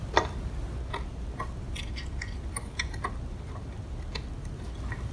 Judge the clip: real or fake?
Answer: real